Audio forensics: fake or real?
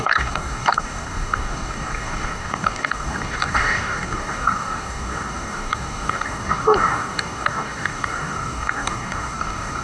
fake